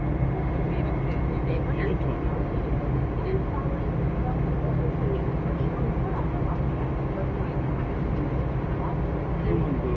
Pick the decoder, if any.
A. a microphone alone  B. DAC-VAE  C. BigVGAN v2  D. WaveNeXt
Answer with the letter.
A